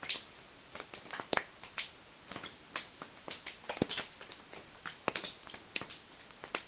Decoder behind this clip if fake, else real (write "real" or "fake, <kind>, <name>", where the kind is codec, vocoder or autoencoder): fake, vocoder, BigVGAN v2